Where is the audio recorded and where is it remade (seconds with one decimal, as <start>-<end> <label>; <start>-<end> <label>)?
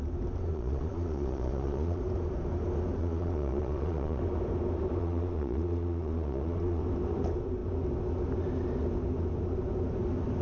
0.0-0.5 recorded; 0.5-2.0 remade; 2.0-3.0 recorded; 3.0-4.2 remade; 4.2-5.0 recorded; 5.0-6.8 remade; 6.8-10.4 recorded